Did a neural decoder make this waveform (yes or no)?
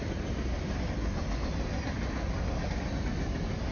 no